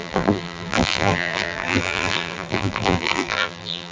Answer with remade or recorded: remade